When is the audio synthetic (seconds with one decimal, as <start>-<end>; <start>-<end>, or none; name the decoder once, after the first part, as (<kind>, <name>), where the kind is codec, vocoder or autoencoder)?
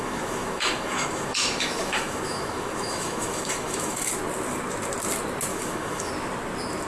0.0-4.1 (autoencoder, DAC-VAE); 5.5-6.1